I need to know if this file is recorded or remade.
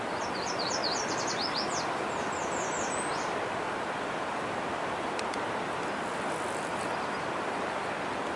remade